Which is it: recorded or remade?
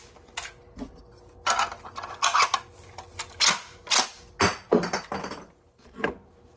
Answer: recorded